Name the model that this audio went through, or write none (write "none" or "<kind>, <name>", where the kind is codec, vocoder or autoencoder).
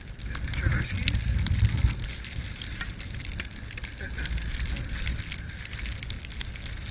none